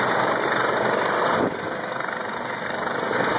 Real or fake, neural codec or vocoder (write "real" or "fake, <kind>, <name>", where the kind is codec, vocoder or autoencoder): real